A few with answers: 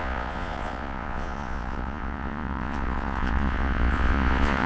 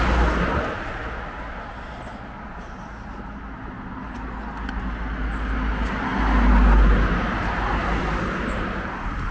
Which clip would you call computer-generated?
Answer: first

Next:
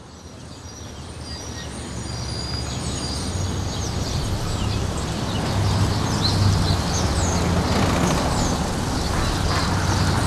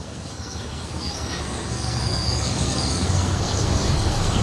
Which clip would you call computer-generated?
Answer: second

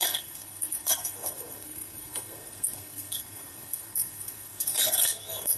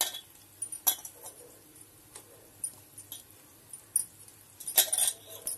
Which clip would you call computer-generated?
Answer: first